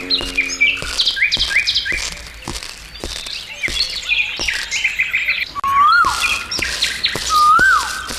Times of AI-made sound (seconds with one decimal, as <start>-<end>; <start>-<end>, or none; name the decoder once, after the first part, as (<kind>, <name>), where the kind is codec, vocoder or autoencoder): none